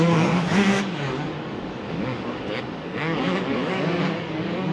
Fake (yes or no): yes